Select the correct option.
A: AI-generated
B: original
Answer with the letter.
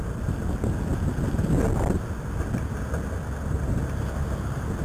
B